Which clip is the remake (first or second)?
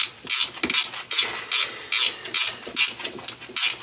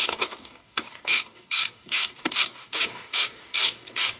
second